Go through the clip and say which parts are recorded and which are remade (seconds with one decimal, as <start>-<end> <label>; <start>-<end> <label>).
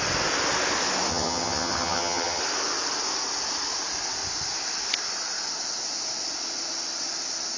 0.0-1.1 recorded; 1.1-2.4 remade; 2.4-7.6 recorded